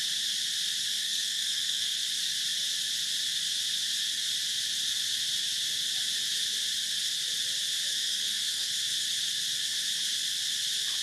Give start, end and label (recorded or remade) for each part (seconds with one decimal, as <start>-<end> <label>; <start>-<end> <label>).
0.0-1.0 recorded; 1.0-1.9 remade; 1.9-7.9 recorded; 7.9-8.7 remade; 8.7-11.0 recorded